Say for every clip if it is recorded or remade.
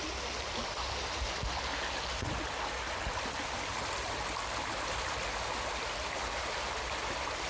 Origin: recorded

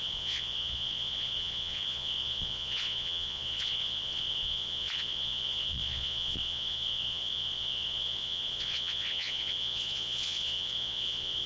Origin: remade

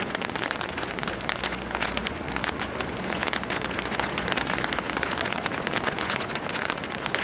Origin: remade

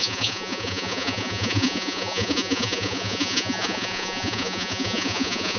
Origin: remade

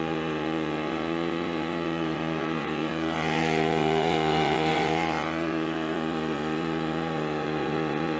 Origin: remade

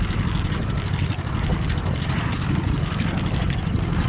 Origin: recorded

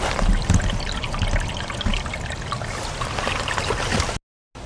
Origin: recorded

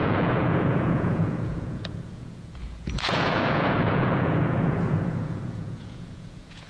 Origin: remade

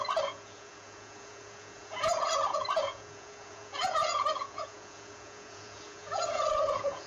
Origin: remade